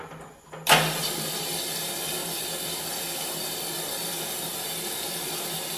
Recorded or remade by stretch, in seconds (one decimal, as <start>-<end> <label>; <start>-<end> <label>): 0.0-2.2 recorded; 2.2-3.3 remade; 3.3-4.5 recorded; 4.5-5.8 remade